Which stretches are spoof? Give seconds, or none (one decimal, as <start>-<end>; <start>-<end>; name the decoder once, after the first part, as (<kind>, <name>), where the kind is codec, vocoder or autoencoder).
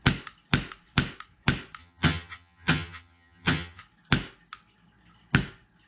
1.8-3.8 (vocoder, HiFi-GAN)